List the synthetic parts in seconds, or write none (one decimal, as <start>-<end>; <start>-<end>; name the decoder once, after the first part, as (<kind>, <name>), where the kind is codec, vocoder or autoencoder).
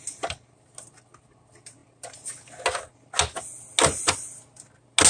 none